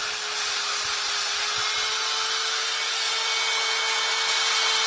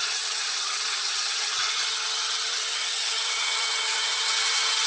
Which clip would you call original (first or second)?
first